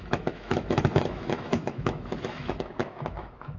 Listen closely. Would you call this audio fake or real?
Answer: fake